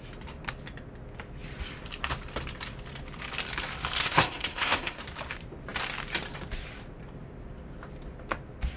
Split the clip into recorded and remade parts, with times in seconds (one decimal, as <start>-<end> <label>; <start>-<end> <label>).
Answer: 0.0-4.0 recorded; 4.0-5.0 remade; 5.0-8.8 recorded